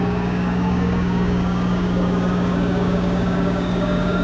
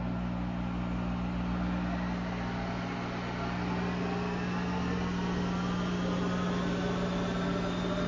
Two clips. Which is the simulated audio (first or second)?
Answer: first